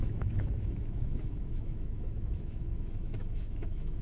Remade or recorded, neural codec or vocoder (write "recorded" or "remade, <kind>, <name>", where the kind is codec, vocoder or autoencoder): remade, autoencoder, DAC-VAE